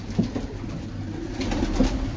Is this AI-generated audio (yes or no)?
no